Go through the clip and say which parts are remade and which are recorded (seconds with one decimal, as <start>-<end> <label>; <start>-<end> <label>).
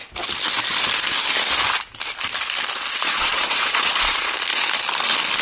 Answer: 0.0-2.9 recorded; 2.9-4.3 remade; 4.3-5.4 recorded